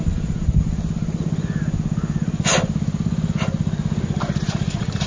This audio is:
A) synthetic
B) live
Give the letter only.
B